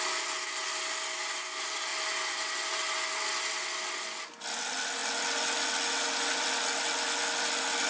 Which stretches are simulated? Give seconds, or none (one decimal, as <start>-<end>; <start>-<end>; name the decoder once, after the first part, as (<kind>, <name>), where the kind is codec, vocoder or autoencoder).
none